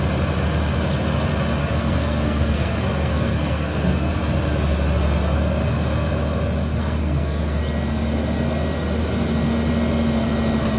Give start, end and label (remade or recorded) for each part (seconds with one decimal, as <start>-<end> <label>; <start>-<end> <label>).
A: 0.0-1.6 recorded; 1.6-4.1 remade; 4.1-6.8 recorded; 6.8-7.6 remade; 7.6-10.8 recorded